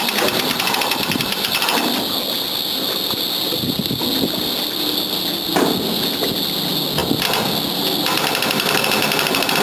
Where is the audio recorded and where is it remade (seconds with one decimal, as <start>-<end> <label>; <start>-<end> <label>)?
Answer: 0.0-9.6 recorded